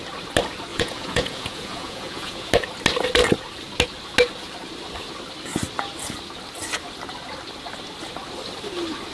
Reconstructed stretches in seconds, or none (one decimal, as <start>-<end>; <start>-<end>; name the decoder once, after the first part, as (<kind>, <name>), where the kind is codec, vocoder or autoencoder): 0.7-2.5 (vocoder, Vocos)